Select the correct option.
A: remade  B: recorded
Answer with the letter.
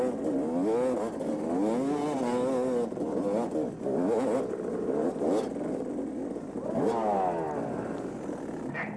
B